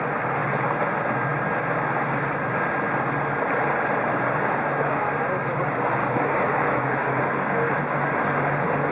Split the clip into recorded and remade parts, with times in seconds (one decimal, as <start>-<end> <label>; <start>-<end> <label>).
0.0-4.1 recorded; 4.1-5.0 remade; 5.0-6.0 recorded; 6.0-7.7 remade; 7.7-8.9 recorded

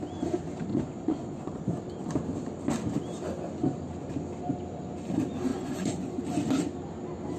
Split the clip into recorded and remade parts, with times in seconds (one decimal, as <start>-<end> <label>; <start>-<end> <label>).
0.0-0.7 recorded; 0.7-1.6 remade; 1.6-5.5 recorded; 5.5-6.2 remade; 6.2-7.4 recorded

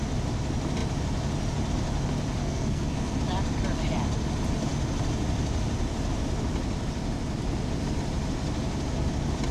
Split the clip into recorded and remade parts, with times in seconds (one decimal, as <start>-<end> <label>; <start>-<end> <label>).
0.0-2.4 recorded; 2.4-3.2 remade; 3.2-9.5 recorded

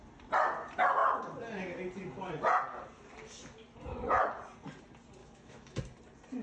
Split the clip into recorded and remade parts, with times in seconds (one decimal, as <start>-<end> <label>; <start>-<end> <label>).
0.0-5.2 recorded; 5.2-5.8 remade; 5.8-6.4 recorded

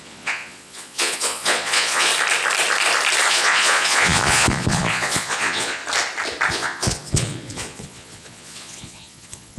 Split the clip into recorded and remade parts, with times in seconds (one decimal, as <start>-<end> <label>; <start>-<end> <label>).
0.0-2.1 remade; 2.1-3.3 recorded; 3.3-5.8 remade; 5.8-6.5 recorded; 6.5-9.6 remade

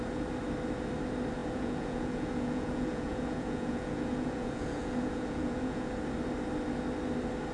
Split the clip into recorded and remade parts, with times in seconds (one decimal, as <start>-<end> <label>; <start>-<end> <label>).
0.0-1.4 recorded; 1.4-5.9 remade; 5.9-7.5 recorded

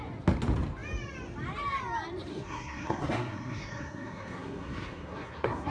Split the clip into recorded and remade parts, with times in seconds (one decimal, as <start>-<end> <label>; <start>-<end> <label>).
0.0-2.3 recorded; 2.3-5.7 remade

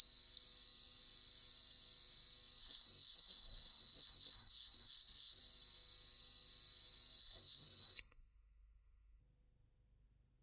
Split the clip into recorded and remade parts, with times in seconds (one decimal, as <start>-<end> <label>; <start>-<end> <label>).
0.0-2.6 recorded; 2.6-5.4 remade; 5.4-7.2 recorded; 7.2-9.2 remade; 9.2-10.4 recorded